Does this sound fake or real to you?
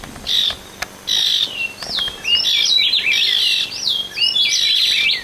real